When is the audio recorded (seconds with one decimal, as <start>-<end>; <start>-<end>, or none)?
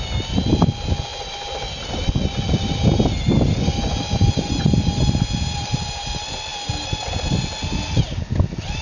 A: 0.0-8.8